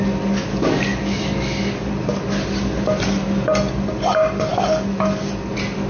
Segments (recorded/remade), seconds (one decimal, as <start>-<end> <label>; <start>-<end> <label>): 0.0-0.5 recorded; 0.5-1.9 remade; 1.9-5.9 recorded